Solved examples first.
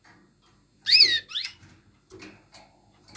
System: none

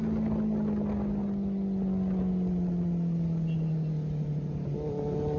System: none